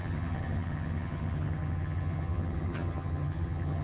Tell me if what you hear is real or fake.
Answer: fake